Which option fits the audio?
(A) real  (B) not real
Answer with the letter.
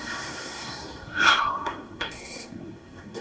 B